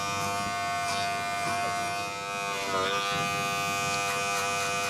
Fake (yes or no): no